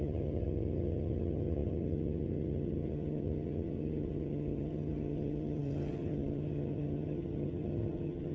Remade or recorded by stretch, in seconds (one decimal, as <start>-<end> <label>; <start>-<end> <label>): 0.0-8.3 remade